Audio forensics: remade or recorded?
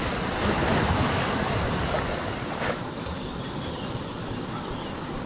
recorded